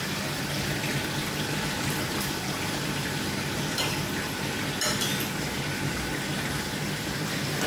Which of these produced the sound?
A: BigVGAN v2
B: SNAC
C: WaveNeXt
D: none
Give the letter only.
A